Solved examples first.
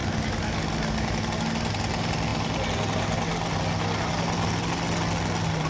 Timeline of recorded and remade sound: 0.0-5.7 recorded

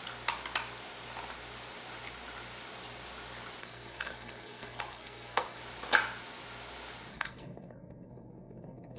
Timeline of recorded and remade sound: 0.0-3.6 recorded; 3.6-5.6 remade; 5.6-7.1 recorded; 7.1-9.0 remade

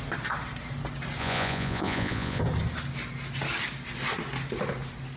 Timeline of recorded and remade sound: 0.0-1.2 recorded; 1.2-2.4 remade; 2.4-5.2 recorded

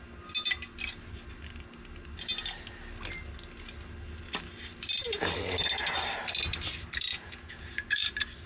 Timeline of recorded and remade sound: 0.0-7.1 recorded; 7.1-8.1 remade; 8.1-8.5 recorded

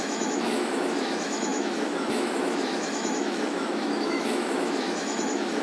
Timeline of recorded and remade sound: 0.0-5.6 remade

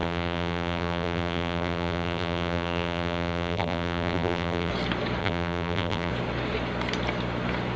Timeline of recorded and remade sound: 0.0-4.7 remade; 4.7-5.2 recorded; 5.2-6.1 remade; 6.1-7.8 recorded